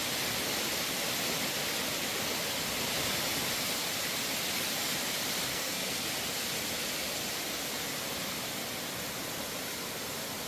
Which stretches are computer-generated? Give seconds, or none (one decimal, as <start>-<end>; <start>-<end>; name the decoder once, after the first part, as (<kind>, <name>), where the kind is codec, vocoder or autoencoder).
5.5-6.1 (codec, SNAC)